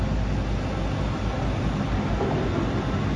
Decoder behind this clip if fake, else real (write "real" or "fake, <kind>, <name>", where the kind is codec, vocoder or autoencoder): real